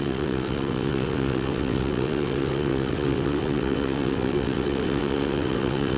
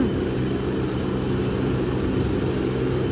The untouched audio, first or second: second